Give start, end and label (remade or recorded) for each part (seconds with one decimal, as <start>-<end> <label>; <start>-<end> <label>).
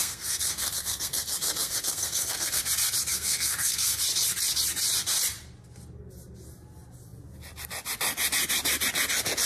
0.0-2.6 remade; 2.6-3.1 recorded; 3.1-4.0 remade; 4.0-9.5 recorded